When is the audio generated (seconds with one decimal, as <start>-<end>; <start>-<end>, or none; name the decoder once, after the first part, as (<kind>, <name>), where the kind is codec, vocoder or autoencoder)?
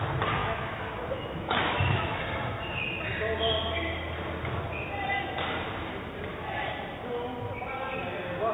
0.4-2.2 (autoencoder, DAC-VAE)